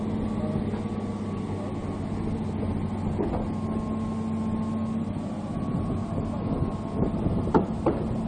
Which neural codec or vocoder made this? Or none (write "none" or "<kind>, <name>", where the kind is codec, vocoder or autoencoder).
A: none